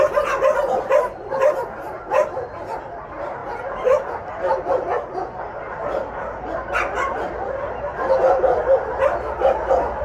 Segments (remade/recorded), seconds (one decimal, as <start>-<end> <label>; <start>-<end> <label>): 0.0-10.0 recorded